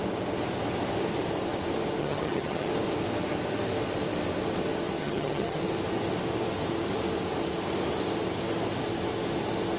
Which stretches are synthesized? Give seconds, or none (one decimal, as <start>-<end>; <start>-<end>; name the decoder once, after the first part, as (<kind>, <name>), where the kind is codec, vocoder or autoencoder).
2.0-2.7 (vocoder, HiFi-GAN); 5.0-5.6